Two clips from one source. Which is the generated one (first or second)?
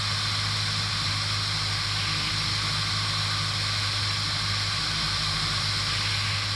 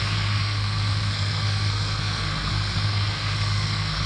second